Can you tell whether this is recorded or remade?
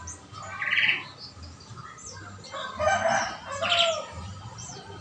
recorded